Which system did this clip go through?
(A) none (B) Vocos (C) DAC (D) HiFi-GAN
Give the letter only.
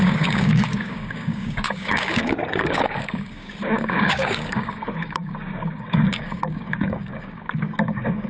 C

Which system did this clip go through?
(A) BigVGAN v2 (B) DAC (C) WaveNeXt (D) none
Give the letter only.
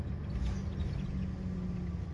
D